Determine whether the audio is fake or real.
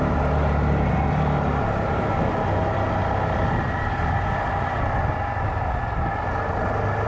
real